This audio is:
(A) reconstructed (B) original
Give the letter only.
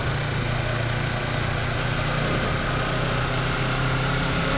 B